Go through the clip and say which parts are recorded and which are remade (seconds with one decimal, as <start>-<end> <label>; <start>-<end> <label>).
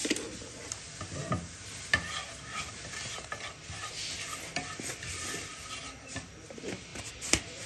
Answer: 0.0-0.6 remade; 0.6-7.7 recorded